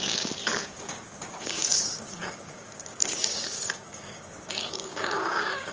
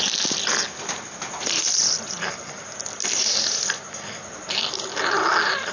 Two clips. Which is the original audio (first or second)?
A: second